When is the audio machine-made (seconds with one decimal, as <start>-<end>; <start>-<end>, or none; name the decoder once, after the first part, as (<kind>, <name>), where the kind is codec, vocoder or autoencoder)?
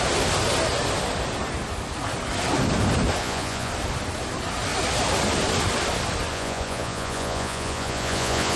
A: 3.2-3.7 (vocoder, Vocos); 6.3-8.6